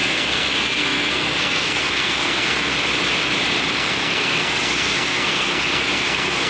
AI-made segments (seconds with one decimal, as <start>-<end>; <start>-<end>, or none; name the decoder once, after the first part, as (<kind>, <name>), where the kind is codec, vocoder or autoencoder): 0.0-2.7 (codec, SNAC); 3.7-6.5